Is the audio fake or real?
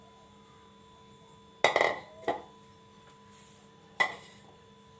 real